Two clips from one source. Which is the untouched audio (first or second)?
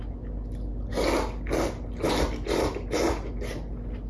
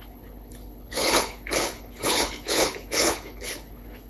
first